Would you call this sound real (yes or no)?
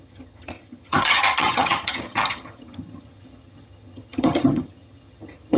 no